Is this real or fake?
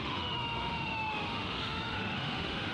fake